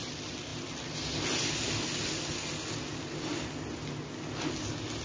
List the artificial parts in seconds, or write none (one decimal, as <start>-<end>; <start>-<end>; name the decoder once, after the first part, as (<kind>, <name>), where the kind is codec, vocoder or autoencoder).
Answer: none